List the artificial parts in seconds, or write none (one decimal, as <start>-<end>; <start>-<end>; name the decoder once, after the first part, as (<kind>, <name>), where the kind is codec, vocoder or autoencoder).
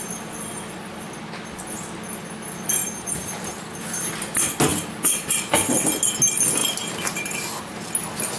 2.8-4.1 (vocoder, BigVGAN v2); 4.7-5.4; 6.6-7.8